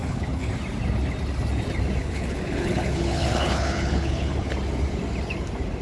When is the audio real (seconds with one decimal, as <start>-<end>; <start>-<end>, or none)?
0.5-2.0; 4.5-5.8